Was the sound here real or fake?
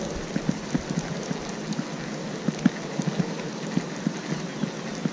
real